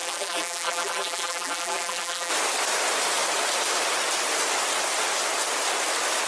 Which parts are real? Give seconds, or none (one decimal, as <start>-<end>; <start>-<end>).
2.3-6.3